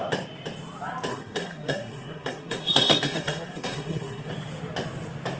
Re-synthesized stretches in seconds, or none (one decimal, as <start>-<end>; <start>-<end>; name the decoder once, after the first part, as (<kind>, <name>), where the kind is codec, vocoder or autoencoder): 1.1-4.3 (codec, SNAC)